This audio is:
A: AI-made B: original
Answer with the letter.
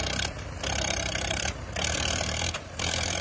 A